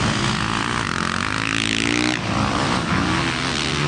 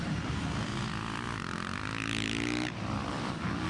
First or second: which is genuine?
first